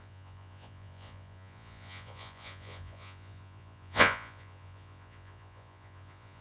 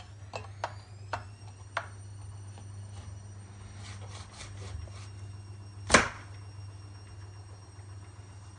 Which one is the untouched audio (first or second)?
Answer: second